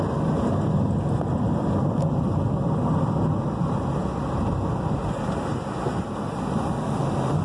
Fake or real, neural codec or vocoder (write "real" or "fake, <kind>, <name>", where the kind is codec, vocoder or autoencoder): real